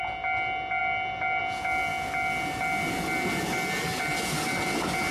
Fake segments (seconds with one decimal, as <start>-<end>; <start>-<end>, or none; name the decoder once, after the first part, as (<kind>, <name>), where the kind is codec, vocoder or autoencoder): none